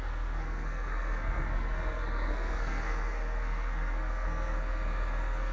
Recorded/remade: remade